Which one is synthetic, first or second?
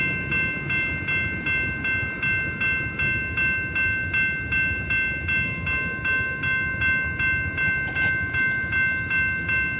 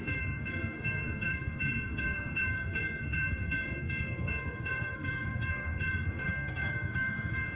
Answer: second